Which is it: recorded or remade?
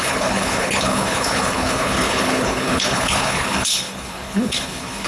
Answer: remade